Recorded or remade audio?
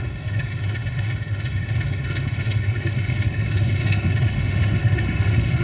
remade